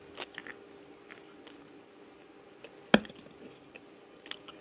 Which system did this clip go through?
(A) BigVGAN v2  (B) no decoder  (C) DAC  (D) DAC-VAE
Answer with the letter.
B